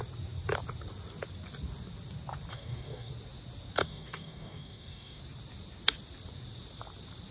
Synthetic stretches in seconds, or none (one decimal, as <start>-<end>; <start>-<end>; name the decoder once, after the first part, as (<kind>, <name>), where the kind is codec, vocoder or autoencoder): 2.5-3.1 (codec, DAC); 3.8-5.2